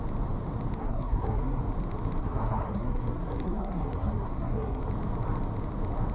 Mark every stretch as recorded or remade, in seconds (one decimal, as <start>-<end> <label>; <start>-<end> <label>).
0.0-0.8 recorded; 0.8-1.6 remade; 1.6-2.2 recorded; 2.2-4.8 remade; 4.8-6.1 recorded